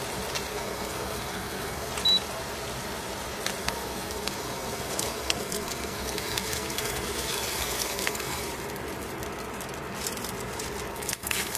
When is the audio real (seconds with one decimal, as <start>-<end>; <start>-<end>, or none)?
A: 0.0-0.5; 1.9-3.6; 8.5-10.9

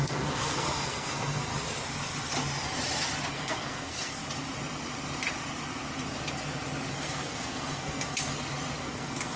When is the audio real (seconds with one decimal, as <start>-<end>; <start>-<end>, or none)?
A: 1.5-3.3; 4.2-6.9; 8.3-8.8

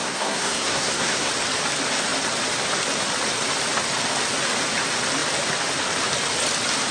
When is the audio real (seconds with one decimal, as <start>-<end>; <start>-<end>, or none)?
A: 1.3-6.9

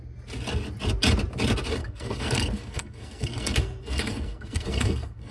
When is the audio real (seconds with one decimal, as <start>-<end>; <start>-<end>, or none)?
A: 0.0-1.8

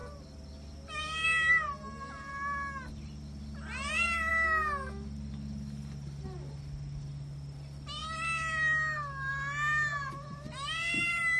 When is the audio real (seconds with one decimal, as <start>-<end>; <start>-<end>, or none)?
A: 0.0-11.4

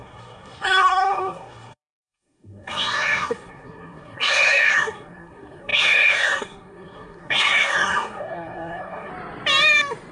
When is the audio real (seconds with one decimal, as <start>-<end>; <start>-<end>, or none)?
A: 9.1-10.1

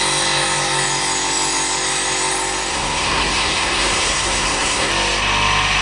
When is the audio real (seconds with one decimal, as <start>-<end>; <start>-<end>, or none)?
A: 0.0-2.7; 4.9-5.8

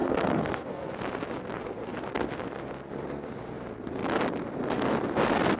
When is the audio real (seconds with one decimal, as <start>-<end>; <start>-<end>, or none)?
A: 0.9-5.6